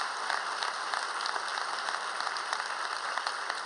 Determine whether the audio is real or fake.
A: real